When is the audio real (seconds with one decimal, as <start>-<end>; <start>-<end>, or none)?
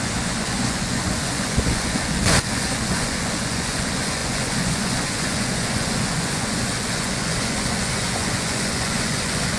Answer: none